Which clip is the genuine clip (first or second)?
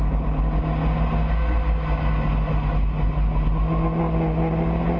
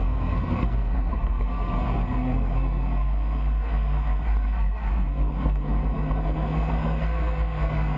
first